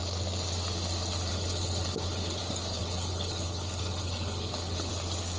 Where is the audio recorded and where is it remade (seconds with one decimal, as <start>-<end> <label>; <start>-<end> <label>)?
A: 0.0-1.3 recorded; 1.3-2.4 remade; 2.4-2.8 recorded; 2.8-4.9 remade; 4.9-5.4 recorded